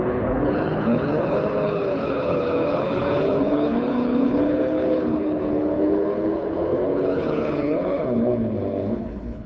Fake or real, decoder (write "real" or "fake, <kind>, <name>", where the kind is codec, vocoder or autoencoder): fake, codec, HILCodec